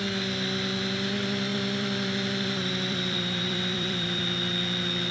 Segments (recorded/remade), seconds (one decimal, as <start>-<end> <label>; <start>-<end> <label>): 0.0-1.5 recorded; 1.5-4.2 remade; 4.2-5.1 recorded